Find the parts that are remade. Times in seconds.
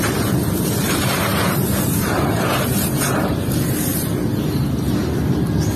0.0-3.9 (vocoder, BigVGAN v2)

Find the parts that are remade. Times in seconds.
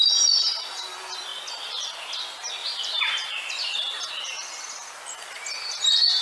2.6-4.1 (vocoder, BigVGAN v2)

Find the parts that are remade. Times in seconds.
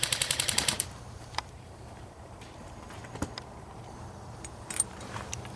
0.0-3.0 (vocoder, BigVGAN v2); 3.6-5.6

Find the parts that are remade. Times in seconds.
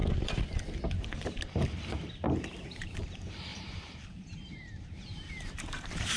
3.5-6.2 (vocoder, BigVGAN v2)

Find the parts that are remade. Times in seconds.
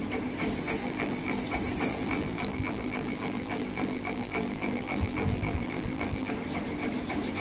0.8-1.4 (vocoder, BigVGAN v2); 1.9-6.3